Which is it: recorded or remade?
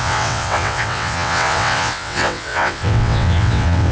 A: remade